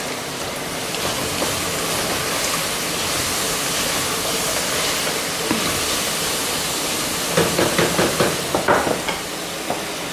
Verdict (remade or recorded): recorded